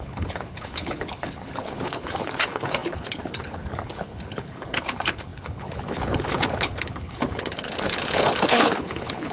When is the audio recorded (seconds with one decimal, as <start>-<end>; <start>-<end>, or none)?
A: none